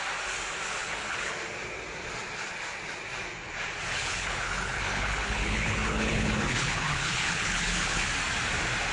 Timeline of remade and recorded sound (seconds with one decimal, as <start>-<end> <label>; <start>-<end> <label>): 0.0-0.8 recorded; 0.8-1.3 remade; 1.3-3.9 recorded; 3.9-8.1 remade; 8.1-8.9 recorded